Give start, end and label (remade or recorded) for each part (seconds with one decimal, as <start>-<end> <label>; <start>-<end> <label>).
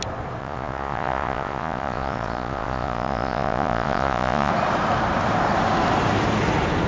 0.0-0.4 recorded; 0.4-4.5 remade; 4.5-6.9 recorded